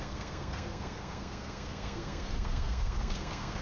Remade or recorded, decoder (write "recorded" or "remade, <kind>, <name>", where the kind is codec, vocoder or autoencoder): remade, codec, SNAC